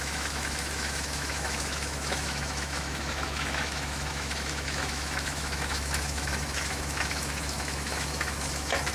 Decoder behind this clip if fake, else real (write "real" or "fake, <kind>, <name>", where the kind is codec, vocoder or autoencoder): fake, autoencoder, DAC-VAE